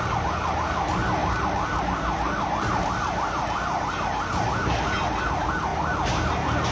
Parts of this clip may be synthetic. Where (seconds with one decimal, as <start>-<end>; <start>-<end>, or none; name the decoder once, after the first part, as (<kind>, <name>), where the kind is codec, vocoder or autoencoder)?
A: none